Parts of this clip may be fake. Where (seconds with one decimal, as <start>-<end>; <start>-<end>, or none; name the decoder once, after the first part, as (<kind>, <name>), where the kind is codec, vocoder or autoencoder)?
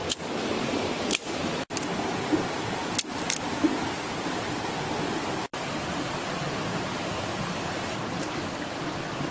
0.0-5.1 (vocoder, BigVGAN v2); 5.5-6.1; 7.1-8.8